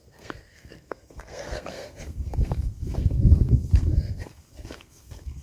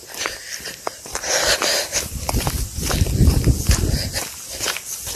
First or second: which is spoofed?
first